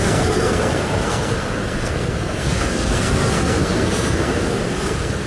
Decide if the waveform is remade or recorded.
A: remade